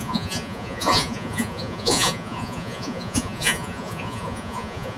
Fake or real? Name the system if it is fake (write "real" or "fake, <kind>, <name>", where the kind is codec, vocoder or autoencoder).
fake, vocoder, Vocos